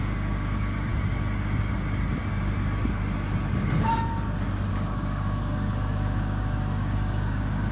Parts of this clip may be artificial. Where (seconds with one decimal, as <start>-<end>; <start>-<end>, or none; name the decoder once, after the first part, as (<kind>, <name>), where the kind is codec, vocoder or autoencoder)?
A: 0.0-0.9 (codec, DAC); 4.7-7.7